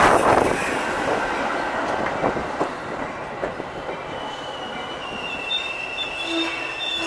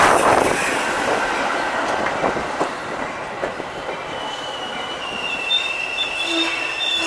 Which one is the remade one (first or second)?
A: second